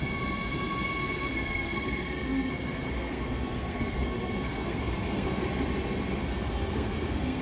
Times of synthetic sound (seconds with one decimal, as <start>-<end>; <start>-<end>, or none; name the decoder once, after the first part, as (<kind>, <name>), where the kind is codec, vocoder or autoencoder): 1.0-5.4 (codec, SNAC); 6.2-7.4